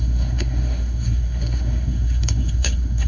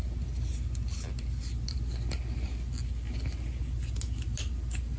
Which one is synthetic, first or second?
first